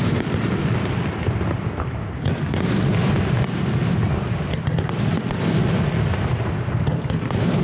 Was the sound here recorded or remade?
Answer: recorded